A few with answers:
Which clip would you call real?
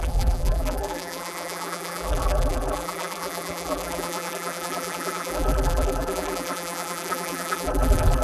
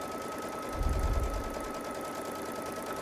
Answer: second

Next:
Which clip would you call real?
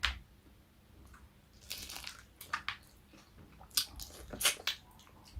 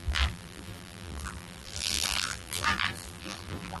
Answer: first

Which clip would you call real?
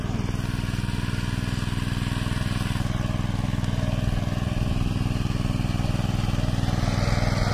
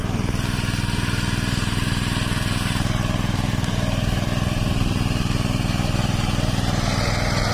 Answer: first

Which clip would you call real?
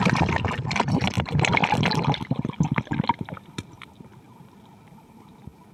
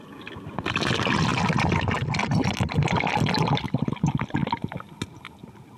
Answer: second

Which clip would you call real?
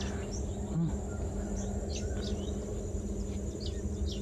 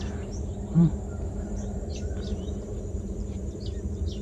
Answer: first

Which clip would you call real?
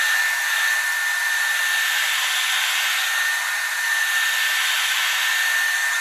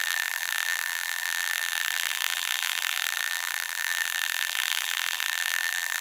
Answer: first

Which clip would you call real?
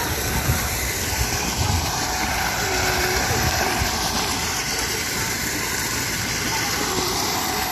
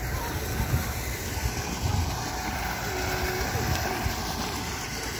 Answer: second